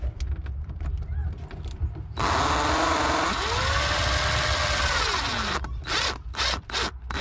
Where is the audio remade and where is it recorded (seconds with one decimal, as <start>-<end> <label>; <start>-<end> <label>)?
0.0-7.2 recorded